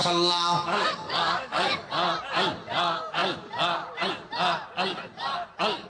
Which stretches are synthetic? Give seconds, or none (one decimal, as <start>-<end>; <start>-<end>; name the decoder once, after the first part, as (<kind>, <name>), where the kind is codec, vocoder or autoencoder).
0.0-1.9 (codec, DAC)